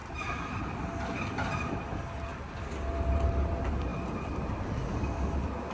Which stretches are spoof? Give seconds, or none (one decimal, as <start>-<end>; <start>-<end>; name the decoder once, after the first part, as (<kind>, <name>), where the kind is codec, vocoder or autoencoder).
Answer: none